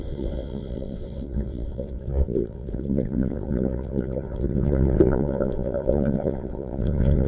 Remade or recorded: remade